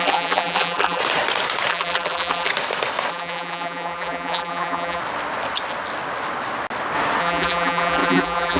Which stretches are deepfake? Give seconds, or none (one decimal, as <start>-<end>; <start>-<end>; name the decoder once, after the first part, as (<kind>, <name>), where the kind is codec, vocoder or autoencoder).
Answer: 0.0-1.0 (vocoder, BigVGAN v2); 1.7-2.5; 3.1-5.0; 7.2-8.6